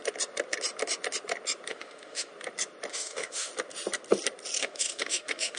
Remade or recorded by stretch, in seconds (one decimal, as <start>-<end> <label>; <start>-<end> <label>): 0.0-1.7 recorded; 1.7-2.3 remade; 2.3-2.9 recorded; 2.9-3.5 remade; 3.5-4.6 recorded; 4.6-5.6 remade